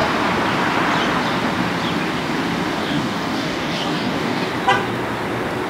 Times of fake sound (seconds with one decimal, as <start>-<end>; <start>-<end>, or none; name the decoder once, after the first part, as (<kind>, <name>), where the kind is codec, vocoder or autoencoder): 2.8-4.5 (codec, DAC)